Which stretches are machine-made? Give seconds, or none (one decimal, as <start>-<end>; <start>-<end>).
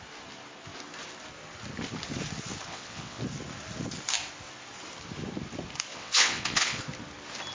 2.7-3.2; 5.9-6.8